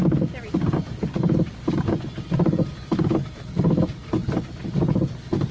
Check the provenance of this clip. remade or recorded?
recorded